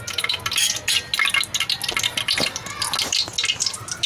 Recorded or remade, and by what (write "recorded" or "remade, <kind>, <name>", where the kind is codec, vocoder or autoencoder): recorded